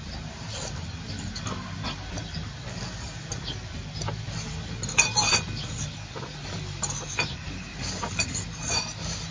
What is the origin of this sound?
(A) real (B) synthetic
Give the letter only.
A